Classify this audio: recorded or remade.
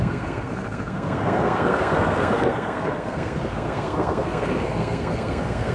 remade